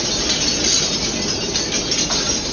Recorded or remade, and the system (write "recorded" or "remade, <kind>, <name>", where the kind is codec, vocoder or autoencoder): recorded